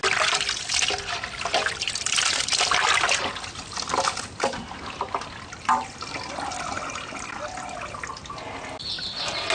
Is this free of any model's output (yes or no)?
yes